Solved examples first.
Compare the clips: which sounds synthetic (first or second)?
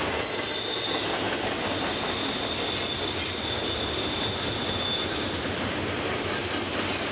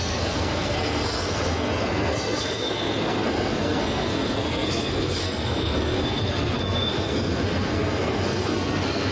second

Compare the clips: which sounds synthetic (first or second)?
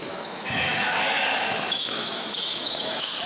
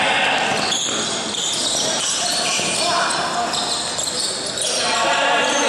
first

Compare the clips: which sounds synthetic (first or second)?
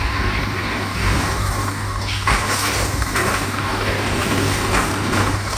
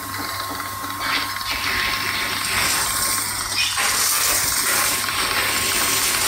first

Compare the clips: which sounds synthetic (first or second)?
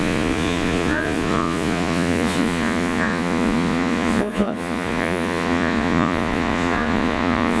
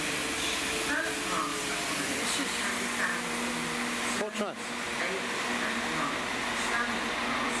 first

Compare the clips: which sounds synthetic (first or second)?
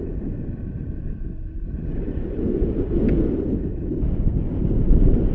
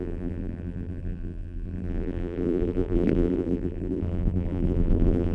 second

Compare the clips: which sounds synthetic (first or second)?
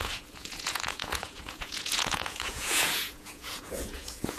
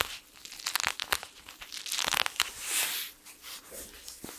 first